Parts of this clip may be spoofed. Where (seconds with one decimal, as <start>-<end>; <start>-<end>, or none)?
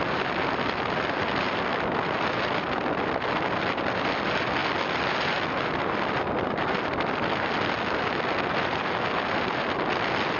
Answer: none